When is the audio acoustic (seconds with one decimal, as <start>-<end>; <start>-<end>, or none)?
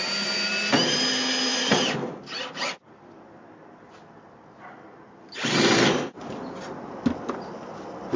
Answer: 0.0-1.5; 2.2-8.2